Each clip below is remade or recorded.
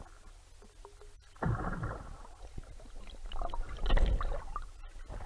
recorded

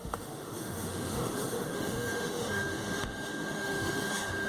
remade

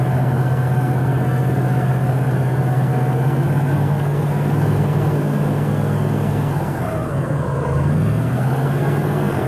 remade